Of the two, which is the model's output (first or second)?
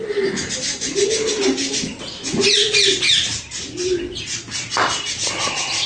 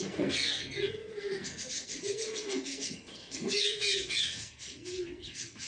second